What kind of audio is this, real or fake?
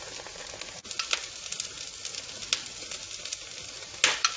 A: real